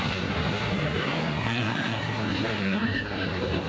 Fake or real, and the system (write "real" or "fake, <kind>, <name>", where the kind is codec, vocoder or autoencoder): fake, codec, SNAC